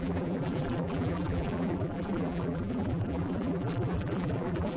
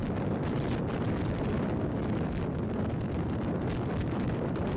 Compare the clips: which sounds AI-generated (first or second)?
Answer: first